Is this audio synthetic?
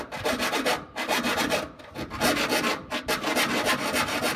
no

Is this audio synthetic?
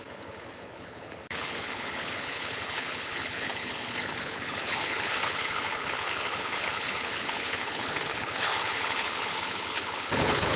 yes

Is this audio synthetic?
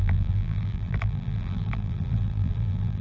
yes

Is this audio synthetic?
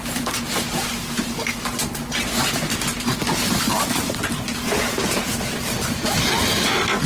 no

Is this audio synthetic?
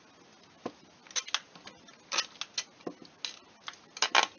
no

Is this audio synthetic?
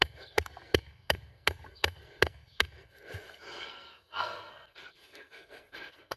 yes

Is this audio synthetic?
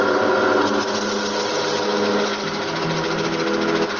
no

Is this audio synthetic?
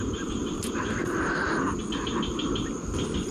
no